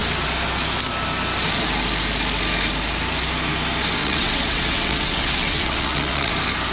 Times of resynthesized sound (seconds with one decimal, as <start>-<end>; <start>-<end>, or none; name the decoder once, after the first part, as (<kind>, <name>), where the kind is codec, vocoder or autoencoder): 4.0-6.3 (vocoder, WaveNeXt)